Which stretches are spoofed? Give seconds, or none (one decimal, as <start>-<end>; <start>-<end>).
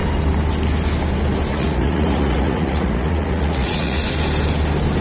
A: 1.5-4.0